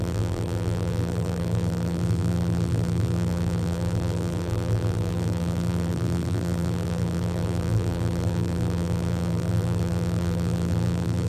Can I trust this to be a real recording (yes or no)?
no